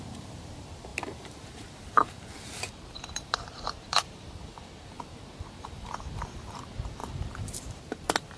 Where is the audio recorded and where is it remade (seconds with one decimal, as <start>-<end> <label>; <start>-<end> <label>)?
0.0-8.4 remade